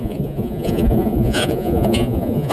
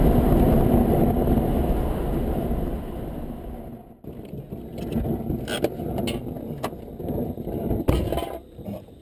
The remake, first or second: first